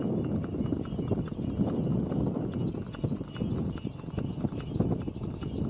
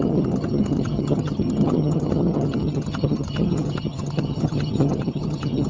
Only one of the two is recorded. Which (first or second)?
first